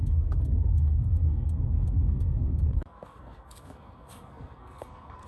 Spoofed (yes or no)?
yes